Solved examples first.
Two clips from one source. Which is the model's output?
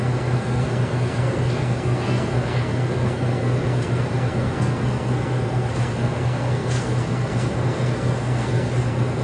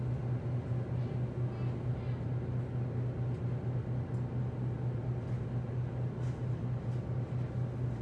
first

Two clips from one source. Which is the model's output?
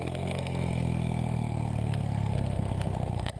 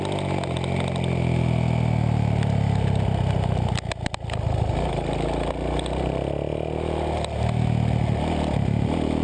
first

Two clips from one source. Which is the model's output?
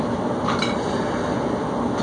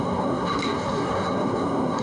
second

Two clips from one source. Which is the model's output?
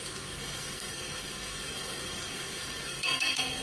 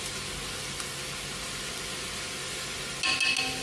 first